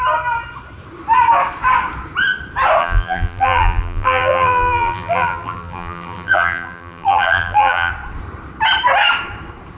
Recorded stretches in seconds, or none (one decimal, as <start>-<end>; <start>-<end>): 0.0-2.8; 7.9-9.8